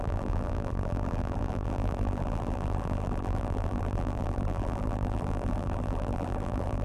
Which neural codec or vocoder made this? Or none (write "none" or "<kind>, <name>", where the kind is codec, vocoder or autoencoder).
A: vocoder, BigVGAN v2